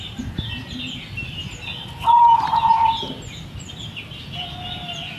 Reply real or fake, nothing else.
real